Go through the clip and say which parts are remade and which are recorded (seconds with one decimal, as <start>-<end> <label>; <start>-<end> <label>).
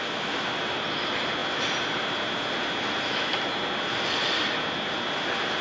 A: 0.0-5.6 recorded